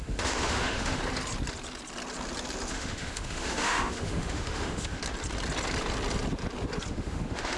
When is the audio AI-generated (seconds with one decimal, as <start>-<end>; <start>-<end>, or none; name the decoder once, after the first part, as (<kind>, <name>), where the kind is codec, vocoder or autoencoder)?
0.0-1.0 (autoencoder, DAC-VAE); 2.7-5.0; 6.9-7.6